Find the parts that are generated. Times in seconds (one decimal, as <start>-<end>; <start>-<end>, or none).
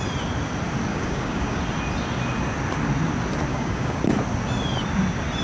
0.9-1.6; 3.5-4.0